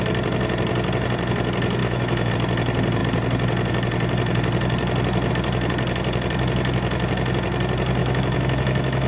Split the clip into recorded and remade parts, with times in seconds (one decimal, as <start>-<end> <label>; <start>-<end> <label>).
0.0-1.8 recorded; 1.8-2.3 remade; 2.3-8.0 recorded; 8.0-9.1 remade